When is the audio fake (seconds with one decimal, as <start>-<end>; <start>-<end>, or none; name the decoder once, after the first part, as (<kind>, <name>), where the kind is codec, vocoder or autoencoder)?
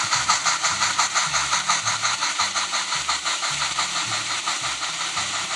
0.0-5.6 (vocoder, BigVGAN v2)